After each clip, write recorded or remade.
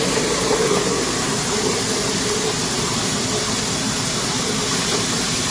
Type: remade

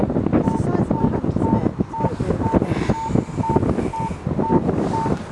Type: recorded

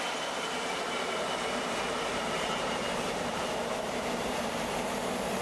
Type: remade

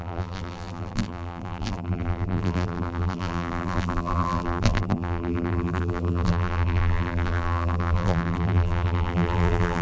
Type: remade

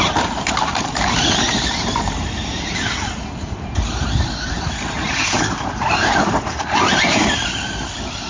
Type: remade